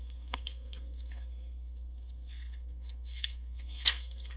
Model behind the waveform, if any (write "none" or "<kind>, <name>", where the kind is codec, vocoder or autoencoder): codec, SNAC